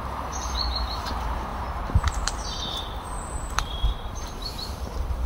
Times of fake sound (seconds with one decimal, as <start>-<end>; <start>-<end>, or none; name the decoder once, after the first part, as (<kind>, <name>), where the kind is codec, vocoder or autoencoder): 0.0-5.3 (vocoder, BigVGAN v2)